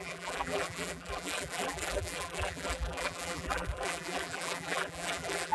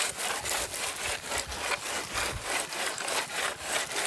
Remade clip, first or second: first